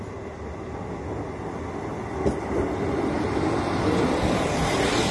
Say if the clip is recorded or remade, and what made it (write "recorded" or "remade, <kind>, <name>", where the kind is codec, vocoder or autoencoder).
recorded